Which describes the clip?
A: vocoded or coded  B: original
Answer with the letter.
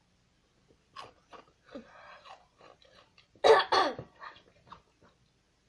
B